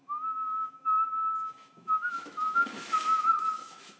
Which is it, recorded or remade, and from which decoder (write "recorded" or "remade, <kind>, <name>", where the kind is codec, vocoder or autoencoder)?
remade, autoencoder, DAC-VAE